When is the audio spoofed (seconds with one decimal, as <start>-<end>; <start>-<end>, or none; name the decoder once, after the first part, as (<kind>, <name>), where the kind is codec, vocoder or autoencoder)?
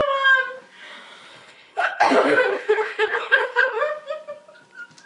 1.3-2.1 (codec, HILCodec); 2.5-3.8